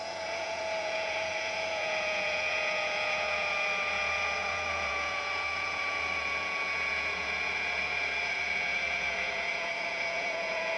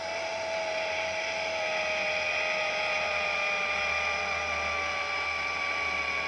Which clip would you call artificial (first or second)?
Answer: first